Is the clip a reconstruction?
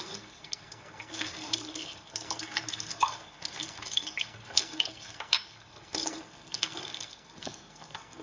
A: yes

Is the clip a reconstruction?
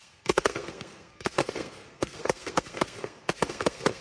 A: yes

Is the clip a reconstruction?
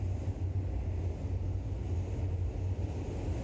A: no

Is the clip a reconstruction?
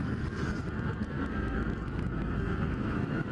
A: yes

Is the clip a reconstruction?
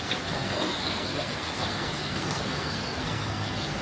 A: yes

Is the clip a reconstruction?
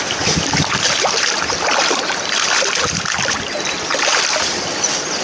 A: no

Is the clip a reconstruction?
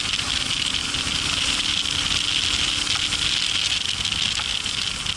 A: no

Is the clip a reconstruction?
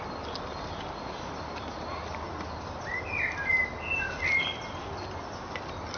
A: no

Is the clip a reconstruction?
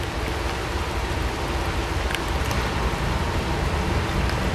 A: no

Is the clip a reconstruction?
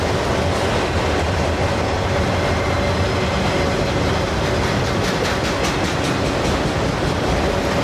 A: no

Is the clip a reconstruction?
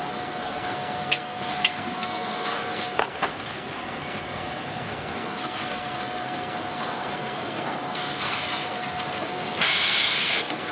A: yes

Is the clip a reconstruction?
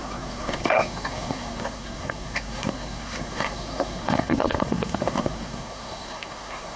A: yes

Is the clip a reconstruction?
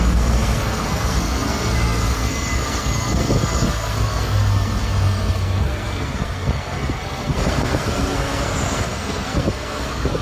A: yes